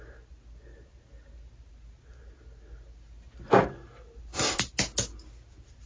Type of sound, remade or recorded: recorded